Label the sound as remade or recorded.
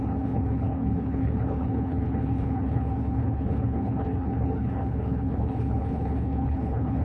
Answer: remade